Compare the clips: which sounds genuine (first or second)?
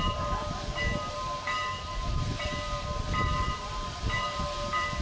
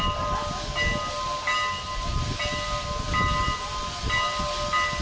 second